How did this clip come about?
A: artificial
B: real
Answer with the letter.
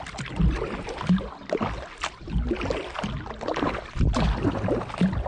B